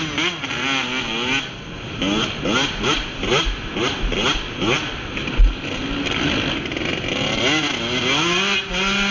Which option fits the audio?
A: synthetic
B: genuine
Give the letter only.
B